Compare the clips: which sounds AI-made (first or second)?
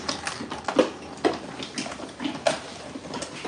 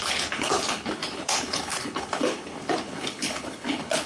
second